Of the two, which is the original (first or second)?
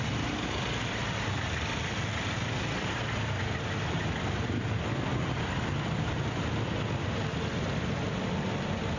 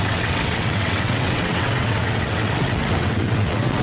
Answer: first